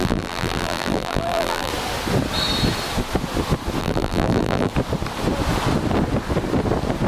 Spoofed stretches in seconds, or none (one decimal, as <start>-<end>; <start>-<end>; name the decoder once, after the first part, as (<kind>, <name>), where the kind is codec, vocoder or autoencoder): 0.0-1.7 (vocoder, BigVGAN v2); 3.8-4.7